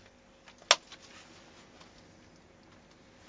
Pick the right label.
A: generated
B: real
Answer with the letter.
B